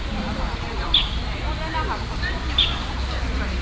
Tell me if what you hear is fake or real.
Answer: real